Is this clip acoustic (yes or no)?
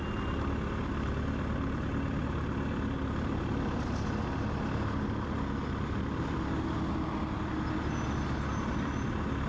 yes